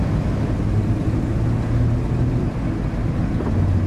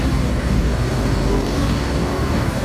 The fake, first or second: second